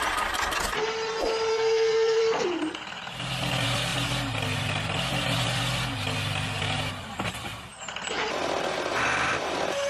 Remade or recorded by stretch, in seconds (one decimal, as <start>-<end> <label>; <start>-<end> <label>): 0.0-1.5 recorded; 1.5-2.2 remade; 2.2-9.9 recorded